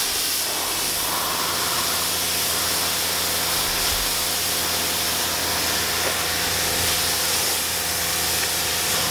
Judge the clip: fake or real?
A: real